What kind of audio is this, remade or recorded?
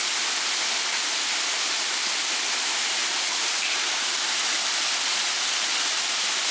recorded